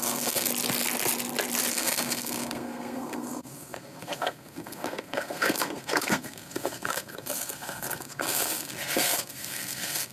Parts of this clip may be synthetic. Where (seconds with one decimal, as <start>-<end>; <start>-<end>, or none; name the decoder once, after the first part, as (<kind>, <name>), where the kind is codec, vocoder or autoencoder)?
0.0-0.5 (codec, SNAC); 1.7-10.1